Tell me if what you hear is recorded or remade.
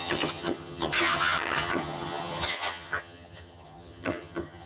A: remade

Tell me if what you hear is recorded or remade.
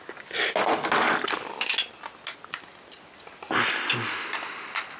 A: recorded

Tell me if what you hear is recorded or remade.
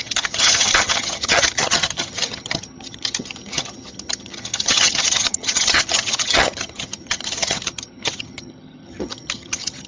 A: remade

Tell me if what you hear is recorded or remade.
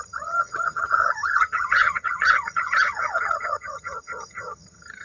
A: remade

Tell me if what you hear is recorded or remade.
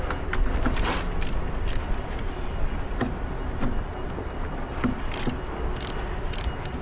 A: recorded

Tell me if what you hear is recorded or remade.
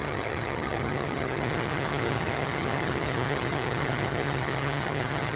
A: remade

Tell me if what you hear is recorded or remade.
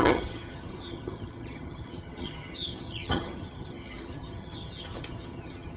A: remade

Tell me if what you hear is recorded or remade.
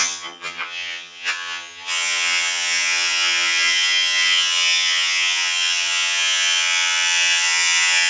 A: remade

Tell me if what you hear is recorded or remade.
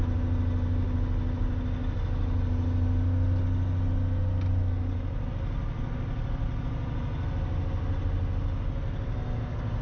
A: recorded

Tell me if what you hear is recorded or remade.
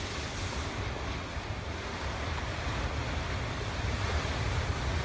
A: recorded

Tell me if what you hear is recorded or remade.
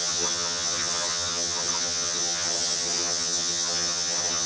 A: remade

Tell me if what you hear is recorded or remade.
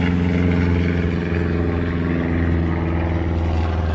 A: recorded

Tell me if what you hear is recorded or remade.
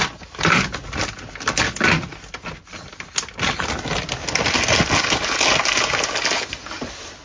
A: recorded